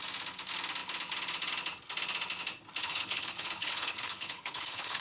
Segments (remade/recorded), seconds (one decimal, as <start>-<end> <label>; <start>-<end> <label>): 0.0-2.8 recorded; 2.8-5.0 remade

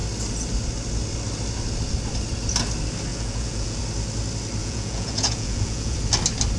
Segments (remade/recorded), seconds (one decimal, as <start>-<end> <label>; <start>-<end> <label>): 0.0-3.1 recorded; 3.1-3.8 remade; 3.8-4.6 recorded; 4.6-6.0 remade; 6.0-6.6 recorded

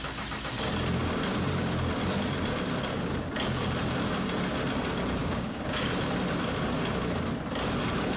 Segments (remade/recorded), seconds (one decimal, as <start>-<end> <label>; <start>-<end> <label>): 0.0-5.2 recorded; 5.2-5.9 remade; 5.9-8.2 recorded